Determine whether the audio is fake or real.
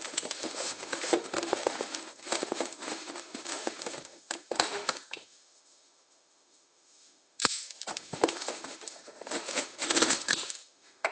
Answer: fake